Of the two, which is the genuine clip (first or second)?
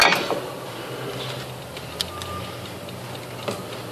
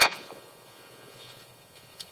first